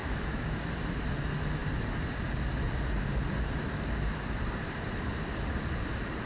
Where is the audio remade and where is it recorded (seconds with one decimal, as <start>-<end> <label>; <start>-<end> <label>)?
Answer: 0.0-0.6 remade; 0.6-6.3 recorded